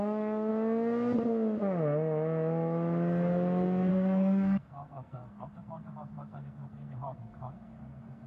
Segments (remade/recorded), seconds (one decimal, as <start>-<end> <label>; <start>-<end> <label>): 0.0-0.5 remade; 0.5-3.9 recorded; 3.9-8.3 remade